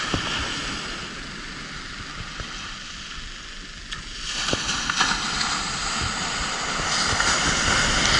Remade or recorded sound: recorded